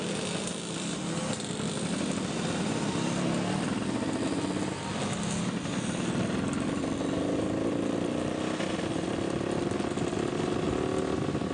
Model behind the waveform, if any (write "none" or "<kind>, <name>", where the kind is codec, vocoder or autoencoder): none